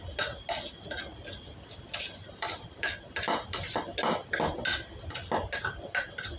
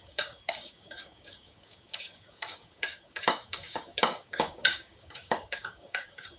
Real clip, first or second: first